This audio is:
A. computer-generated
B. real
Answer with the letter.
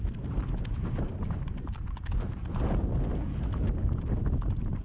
B